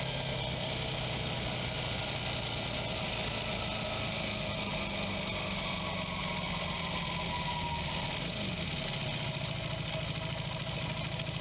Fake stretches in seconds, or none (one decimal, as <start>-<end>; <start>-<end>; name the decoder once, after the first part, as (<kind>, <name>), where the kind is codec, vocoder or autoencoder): none